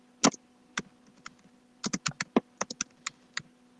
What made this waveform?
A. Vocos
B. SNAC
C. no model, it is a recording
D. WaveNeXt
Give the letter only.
C